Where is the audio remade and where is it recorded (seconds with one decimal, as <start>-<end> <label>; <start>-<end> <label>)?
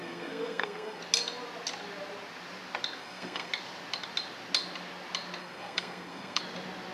0.0-1.0 remade; 1.0-3.0 recorded; 3.0-3.5 remade; 3.5-5.4 recorded; 5.4-6.4 remade; 6.4-6.9 recorded